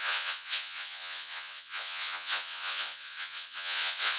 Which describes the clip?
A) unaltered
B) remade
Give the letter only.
B